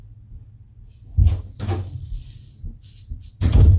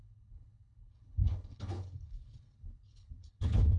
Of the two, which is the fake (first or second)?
second